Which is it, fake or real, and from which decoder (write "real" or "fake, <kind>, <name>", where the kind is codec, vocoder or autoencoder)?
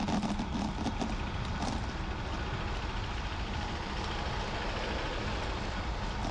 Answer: real